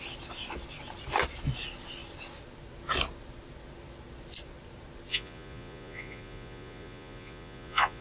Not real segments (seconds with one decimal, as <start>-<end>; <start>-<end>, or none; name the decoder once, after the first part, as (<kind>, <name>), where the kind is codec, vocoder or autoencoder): 5.1-8.0 (vocoder, Vocos)